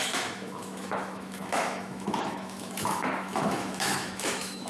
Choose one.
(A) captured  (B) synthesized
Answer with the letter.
B